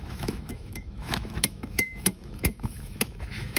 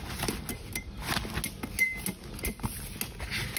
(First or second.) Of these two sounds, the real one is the second